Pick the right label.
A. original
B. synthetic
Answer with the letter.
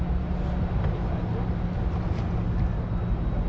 A